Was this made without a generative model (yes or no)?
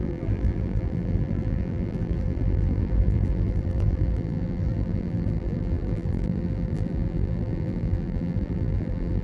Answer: no